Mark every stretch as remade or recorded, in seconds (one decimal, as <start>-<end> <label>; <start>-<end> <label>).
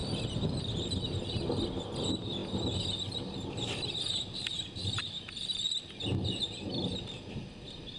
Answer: 0.0-8.0 recorded